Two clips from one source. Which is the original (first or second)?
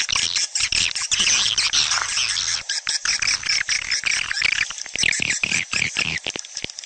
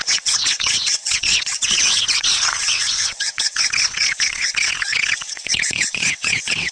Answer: first